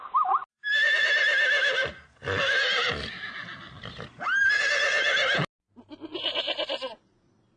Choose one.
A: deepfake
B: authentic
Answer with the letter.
B